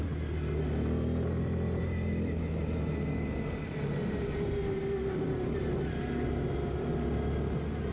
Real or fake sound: real